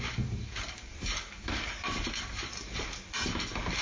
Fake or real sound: fake